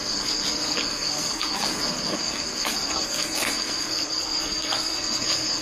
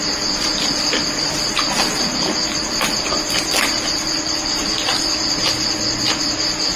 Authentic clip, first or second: second